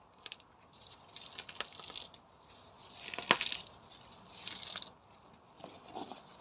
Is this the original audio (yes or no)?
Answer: yes